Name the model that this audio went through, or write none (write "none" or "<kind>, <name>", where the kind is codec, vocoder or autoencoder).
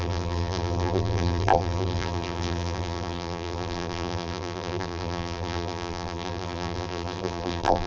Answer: vocoder, BigVGAN v2